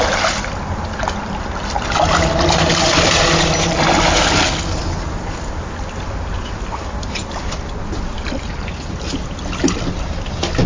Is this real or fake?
real